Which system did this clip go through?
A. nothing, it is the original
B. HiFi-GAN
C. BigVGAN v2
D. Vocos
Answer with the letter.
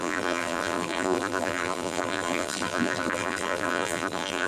C